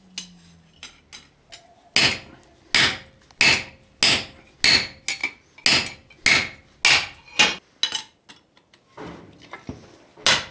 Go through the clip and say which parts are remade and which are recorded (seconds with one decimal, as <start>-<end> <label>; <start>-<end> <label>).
0.0-10.5 recorded